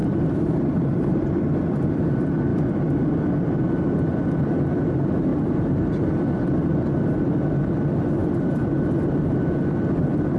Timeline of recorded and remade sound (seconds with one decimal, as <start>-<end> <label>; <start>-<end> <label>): 0.0-1.4 remade; 1.4-5.3 recorded; 5.3-6.1 remade; 6.1-8.2 recorded; 8.2-8.7 remade; 8.7-10.4 recorded